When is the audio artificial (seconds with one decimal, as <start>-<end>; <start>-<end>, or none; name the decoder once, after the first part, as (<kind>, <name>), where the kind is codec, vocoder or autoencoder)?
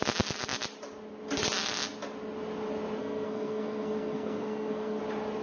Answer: 3.0-5.0 (codec, SNAC)